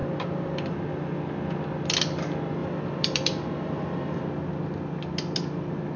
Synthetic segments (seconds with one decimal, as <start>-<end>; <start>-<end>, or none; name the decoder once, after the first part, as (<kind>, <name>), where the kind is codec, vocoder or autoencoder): 0.0-0.8 (vocoder, BigVGAN v2); 2.6-4.2